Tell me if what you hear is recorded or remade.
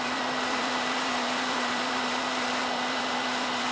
remade